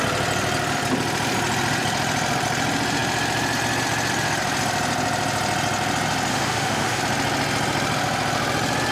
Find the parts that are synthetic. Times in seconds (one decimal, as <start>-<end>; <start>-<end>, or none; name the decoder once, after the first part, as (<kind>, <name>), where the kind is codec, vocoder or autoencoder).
6.3-7.0 (autoencoder, DAC-VAE)